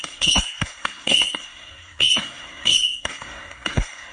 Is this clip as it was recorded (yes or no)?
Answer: no